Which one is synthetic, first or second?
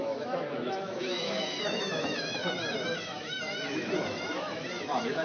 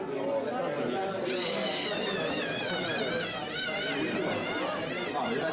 first